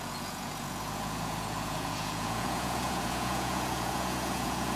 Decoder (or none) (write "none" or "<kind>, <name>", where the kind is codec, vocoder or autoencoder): vocoder, Vocos